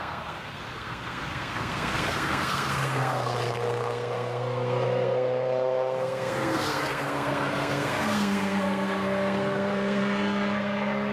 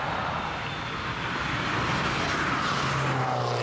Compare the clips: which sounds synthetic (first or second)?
first